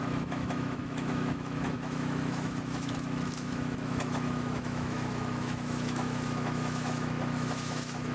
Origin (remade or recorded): remade